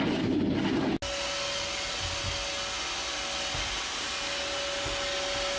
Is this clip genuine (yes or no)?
yes